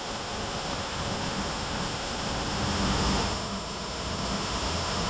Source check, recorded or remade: remade